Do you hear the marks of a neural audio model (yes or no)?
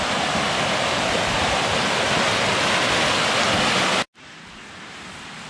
no